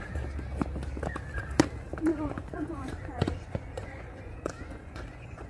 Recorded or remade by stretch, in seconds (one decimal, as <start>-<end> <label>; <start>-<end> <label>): 0.0-2.1 recorded; 2.1-5.5 remade